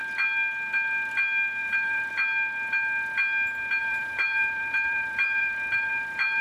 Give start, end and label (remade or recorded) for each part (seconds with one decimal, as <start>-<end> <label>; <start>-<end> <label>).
0.0-1.6 recorded; 1.6-2.1 remade; 2.1-3.8 recorded; 3.8-6.4 remade